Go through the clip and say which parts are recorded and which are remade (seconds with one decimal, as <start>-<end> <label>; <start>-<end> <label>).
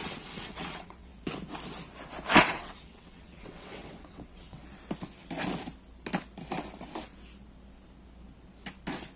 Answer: 0.0-1.1 remade; 1.1-2.4 recorded; 2.4-4.6 remade; 4.6-9.2 recorded